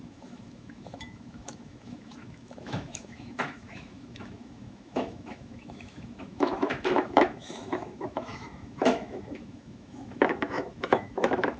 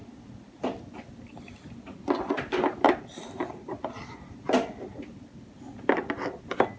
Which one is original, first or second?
second